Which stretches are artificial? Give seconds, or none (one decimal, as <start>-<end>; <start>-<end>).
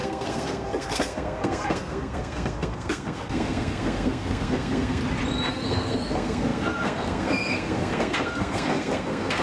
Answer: 0.0-5.0; 5.5-9.4